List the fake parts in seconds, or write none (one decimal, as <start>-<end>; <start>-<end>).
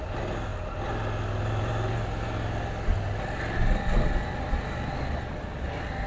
none